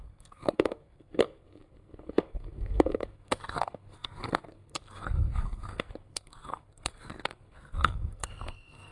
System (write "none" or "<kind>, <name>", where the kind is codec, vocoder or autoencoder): codec, SNAC